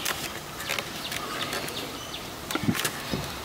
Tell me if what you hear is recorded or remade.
recorded